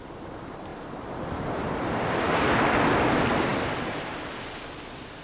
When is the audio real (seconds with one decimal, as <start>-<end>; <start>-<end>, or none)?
0.0-0.7; 1.9-5.2